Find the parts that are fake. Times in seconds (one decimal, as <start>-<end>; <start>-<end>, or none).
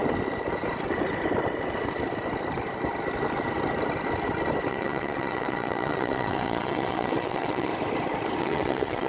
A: 4.7-7.7; 8.4-9.1